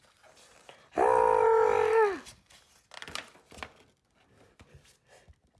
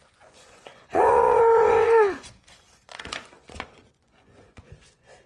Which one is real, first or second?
first